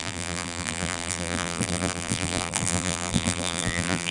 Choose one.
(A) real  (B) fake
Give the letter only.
B